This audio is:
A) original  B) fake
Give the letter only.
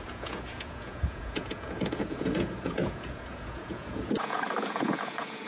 B